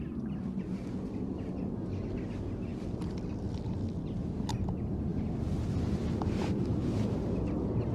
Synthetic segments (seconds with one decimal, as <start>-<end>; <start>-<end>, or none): none